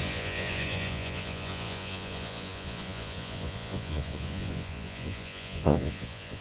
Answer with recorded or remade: remade